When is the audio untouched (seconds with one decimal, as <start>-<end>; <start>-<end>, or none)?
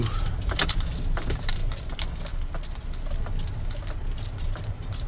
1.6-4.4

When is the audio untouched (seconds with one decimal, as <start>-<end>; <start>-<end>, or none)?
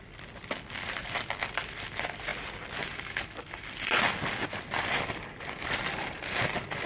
0.0-6.9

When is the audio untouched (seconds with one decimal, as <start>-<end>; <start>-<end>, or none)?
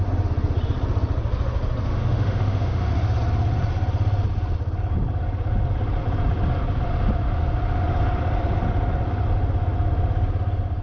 0.0-1.9; 2.9-10.8